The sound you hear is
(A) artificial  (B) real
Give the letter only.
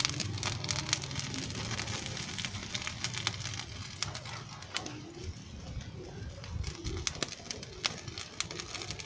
B